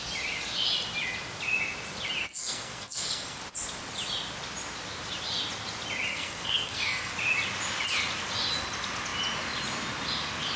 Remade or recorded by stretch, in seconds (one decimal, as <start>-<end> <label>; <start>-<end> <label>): 0.0-2.2 recorded; 2.2-3.4 remade; 3.4-6.1 recorded; 6.1-7.1 remade; 7.1-10.6 recorded